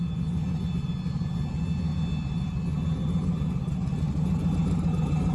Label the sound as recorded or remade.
recorded